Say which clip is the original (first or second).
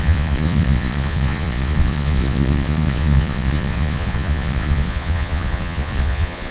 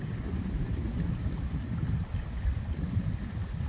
second